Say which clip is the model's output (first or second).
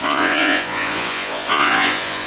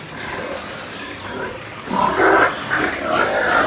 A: first